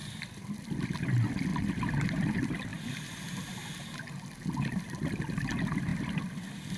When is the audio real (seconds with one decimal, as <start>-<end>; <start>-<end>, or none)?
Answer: 0.6-1.5; 2.1-5.9